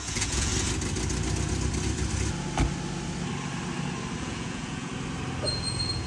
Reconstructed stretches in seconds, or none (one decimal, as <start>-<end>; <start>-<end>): 0.0-0.5; 4.2-4.9; 5.5-6.1